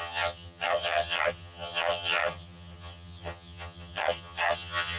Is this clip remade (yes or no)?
yes